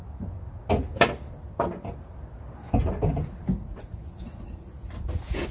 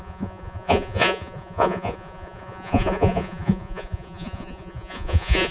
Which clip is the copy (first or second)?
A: second